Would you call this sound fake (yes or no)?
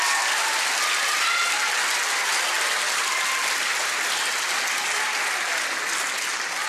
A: no